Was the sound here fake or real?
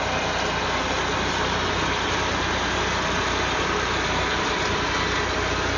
real